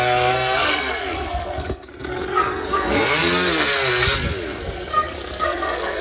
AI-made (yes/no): yes